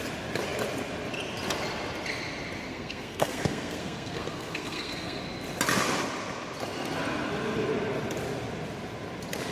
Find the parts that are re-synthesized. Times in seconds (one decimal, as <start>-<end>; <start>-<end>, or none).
2.7-5.2